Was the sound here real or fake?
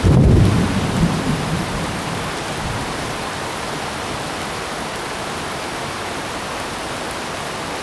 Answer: real